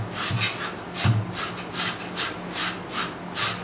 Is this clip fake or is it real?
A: real